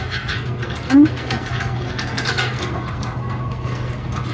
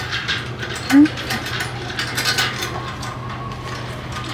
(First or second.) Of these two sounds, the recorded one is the second